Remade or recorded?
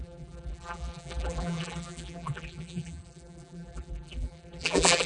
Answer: remade